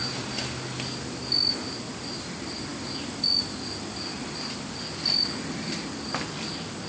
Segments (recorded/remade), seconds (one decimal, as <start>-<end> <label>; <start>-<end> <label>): 0.0-6.9 recorded